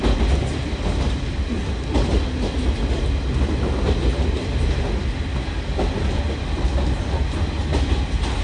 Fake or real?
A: real